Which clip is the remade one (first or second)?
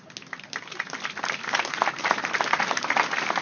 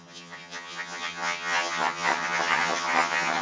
second